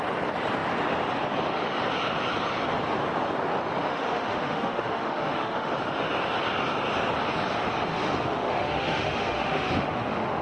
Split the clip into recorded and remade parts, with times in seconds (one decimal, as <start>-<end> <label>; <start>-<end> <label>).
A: 0.0-3.9 recorded; 3.9-5.7 remade; 5.7-7.9 recorded; 7.9-10.4 remade